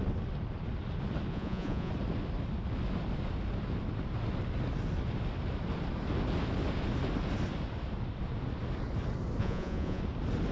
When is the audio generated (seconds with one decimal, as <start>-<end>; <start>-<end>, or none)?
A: 1.3-1.9; 9.4-10.0